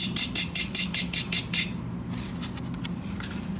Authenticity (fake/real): real